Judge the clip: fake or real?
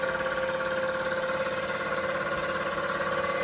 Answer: real